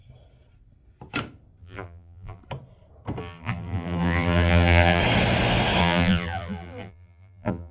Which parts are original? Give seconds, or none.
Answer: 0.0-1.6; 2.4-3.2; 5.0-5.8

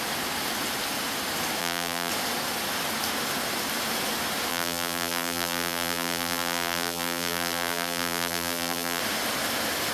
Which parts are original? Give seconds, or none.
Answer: 0.0-1.6; 2.1-4.5; 9.0-9.9

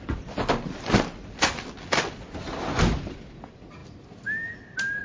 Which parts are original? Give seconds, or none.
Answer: 0.0-5.0

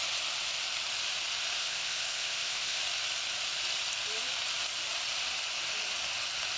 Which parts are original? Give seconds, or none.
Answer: 0.0-1.6; 2.8-6.6

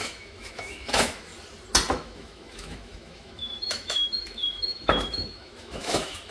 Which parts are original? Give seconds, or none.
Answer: 1.3-1.9

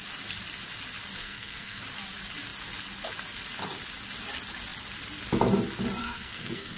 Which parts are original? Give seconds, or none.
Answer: 0.0-1.2; 1.8-6.0